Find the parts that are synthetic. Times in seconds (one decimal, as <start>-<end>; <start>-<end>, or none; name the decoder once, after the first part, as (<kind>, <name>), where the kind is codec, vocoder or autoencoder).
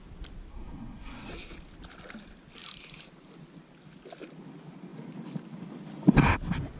0.5-1.3 (codec, SNAC)